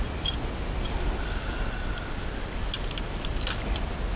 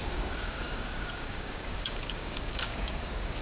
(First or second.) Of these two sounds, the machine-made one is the second